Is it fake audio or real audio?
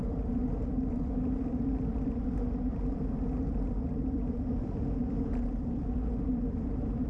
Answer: fake